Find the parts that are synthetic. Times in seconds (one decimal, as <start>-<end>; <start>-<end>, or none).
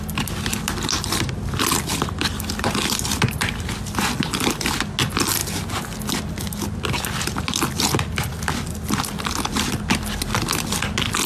none